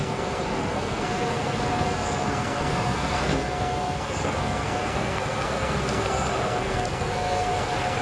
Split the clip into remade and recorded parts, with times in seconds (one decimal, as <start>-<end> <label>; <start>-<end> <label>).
0.0-8.0 remade